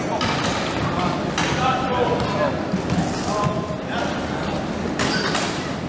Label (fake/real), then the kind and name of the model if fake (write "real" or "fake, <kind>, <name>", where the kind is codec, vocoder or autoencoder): real